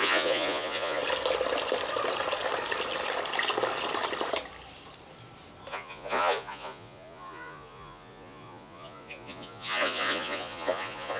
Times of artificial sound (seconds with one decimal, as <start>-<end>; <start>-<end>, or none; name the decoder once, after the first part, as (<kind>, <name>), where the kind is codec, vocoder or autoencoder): 0.0-1.0 (vocoder, Vocos); 5.7-11.2